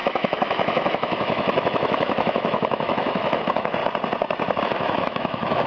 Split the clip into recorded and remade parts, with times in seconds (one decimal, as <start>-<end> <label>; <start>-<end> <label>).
0.0-3.8 remade; 3.8-4.6 recorded; 4.6-5.7 remade